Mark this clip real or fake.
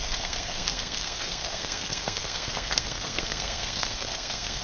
fake